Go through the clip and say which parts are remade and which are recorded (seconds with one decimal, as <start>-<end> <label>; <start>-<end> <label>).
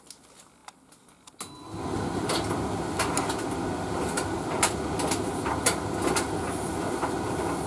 0.0-7.7 recorded